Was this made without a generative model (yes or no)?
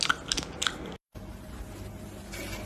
yes